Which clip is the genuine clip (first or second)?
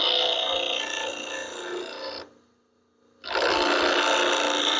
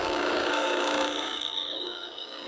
first